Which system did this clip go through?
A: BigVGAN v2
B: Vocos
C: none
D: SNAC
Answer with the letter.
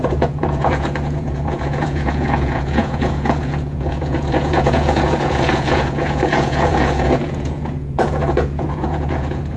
B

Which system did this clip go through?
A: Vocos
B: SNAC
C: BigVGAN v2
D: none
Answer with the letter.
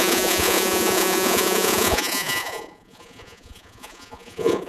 A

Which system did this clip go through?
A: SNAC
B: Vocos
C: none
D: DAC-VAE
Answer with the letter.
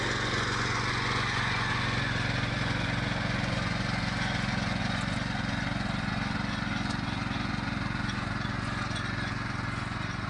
B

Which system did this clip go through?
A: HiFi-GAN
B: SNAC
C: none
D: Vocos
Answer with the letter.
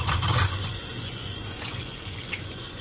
D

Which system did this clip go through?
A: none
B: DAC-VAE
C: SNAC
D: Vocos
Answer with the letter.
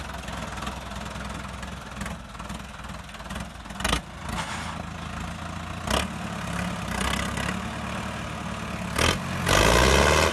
A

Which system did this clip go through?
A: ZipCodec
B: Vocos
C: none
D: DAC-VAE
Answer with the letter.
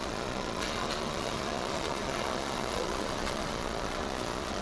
B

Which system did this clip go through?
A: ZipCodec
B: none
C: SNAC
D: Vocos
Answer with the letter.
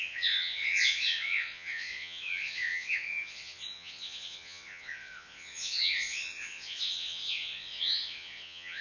D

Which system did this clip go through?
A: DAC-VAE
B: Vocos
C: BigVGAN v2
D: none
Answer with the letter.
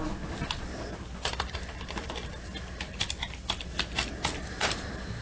D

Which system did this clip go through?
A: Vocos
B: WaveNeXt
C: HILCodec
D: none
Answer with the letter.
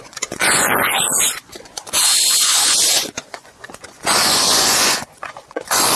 A